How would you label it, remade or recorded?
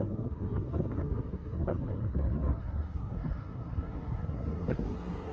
remade